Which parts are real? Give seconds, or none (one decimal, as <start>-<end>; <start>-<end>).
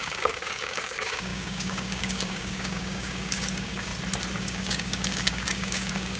3.9-4.4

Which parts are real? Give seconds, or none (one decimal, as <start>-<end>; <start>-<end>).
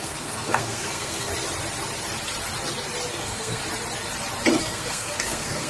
1.3-3.1; 3.6-4.6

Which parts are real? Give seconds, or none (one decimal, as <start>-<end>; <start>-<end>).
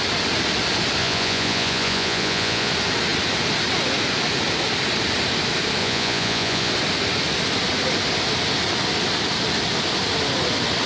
0.0-1.0; 2.7-5.8; 6.7-10.9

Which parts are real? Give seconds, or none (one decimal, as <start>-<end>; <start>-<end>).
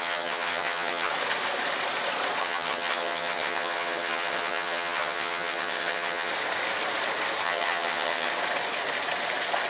1.1-2.4; 6.3-7.4; 8.3-9.7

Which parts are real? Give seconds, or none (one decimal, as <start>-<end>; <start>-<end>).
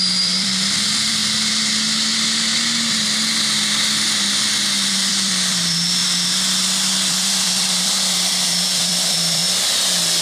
1.2-4.7; 6.0-7.1; 9.4-10.2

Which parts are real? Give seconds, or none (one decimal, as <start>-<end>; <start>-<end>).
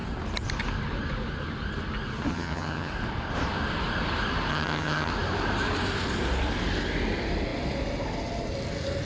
0.0-2.3; 2.9-4.5; 5.1-9.1